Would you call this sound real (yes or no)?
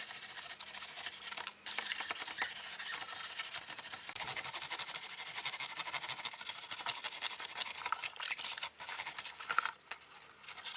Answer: yes